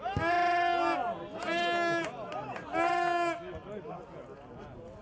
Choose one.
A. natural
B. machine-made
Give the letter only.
A